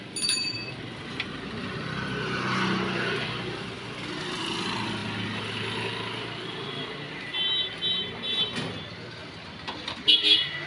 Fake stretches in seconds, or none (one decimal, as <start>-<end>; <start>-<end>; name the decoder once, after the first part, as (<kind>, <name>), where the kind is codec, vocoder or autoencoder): none